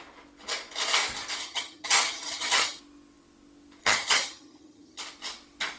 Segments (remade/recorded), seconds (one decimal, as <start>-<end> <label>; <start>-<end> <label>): 0.0-1.4 recorded; 1.4-2.8 remade; 2.8-3.8 recorded; 3.8-5.0 remade; 5.0-5.8 recorded